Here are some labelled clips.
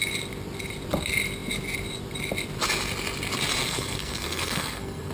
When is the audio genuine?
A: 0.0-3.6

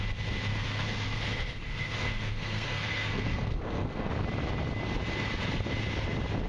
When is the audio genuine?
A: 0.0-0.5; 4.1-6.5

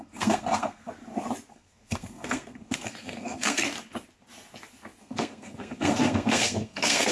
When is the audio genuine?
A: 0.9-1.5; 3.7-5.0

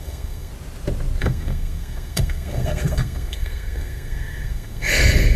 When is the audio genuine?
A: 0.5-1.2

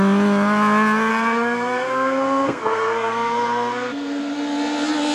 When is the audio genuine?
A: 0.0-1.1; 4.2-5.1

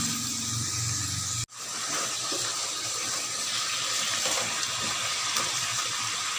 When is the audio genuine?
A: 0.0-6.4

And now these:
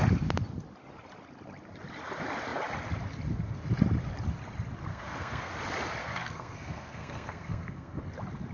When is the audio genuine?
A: 0.0-4.9; 5.5-6.0; 8.0-8.5